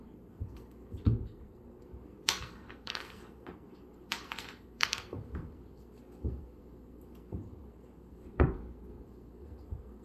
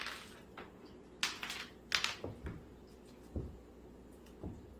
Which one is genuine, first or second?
second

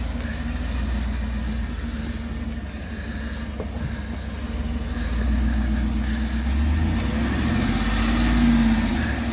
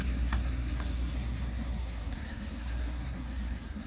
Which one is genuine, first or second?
first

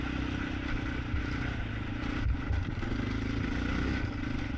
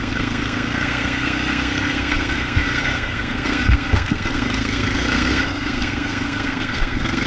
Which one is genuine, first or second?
first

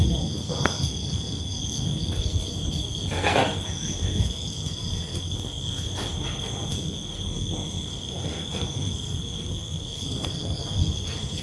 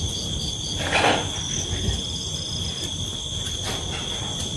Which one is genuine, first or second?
second